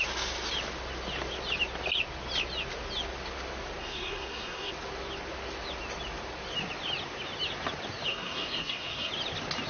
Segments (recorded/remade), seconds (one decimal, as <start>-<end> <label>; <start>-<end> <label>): 0.0-3.8 recorded; 3.8-4.7 remade; 4.7-8.1 recorded; 8.1-9.1 remade; 9.1-9.7 recorded